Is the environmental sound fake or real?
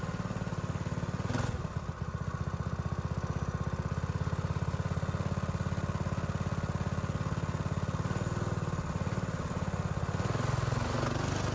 real